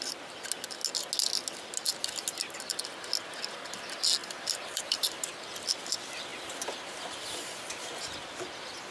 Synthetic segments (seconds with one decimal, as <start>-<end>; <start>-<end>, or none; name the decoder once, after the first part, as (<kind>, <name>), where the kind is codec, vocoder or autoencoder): 4.2-5.2 (vocoder, BigVGAN v2)